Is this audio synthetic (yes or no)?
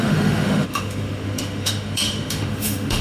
yes